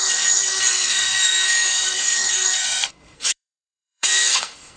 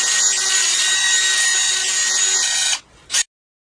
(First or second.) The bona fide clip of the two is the second